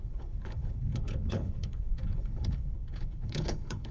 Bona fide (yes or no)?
no